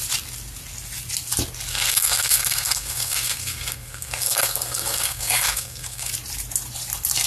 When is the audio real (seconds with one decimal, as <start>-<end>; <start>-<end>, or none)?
0.0-1.7; 6.1-7.3